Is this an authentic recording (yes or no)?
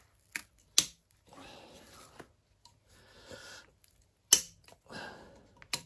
yes